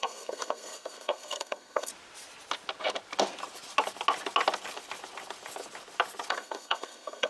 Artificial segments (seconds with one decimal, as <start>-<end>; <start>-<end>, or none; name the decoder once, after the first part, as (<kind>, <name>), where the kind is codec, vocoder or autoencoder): 0.0-1.9 (codec, SNAC); 6.3-7.3